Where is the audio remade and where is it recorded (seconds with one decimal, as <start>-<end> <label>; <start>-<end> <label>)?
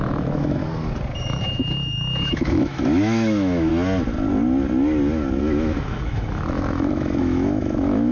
0.0-0.6 remade; 0.6-1.2 recorded; 1.2-3.7 remade; 3.7-5.4 recorded; 5.4-8.1 remade